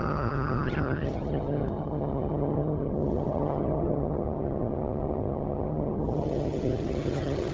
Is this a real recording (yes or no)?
no